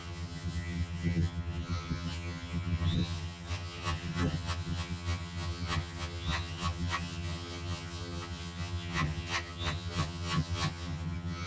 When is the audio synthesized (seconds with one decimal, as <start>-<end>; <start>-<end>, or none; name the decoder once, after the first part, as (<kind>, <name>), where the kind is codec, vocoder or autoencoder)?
0.0-11.5 (vocoder, HiFi-GAN)

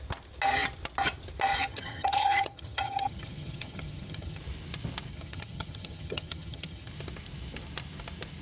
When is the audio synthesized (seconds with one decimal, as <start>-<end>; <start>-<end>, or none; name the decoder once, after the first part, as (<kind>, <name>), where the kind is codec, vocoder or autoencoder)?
1.6-4.4 (vocoder, HiFi-GAN); 5.1-6.9

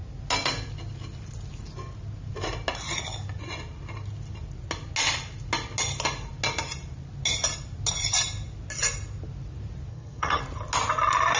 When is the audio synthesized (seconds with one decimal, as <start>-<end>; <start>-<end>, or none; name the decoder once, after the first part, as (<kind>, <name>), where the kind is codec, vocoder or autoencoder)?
9.9-10.4 (vocoder, HiFi-GAN)